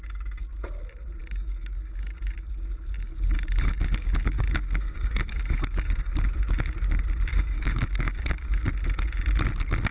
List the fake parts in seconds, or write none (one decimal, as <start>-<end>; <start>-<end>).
1.2-2.5; 3.0-6.1; 7.3-8.7